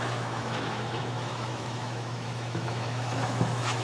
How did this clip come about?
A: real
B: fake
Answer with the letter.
B